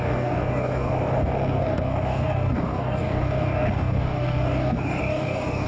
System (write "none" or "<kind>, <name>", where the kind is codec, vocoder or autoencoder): codec, DAC